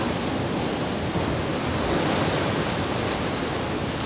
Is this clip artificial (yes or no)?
yes